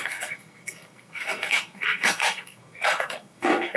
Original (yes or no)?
no